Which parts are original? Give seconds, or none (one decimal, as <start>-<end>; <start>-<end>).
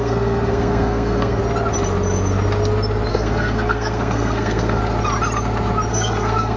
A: 1.4-3.1; 4.8-5.9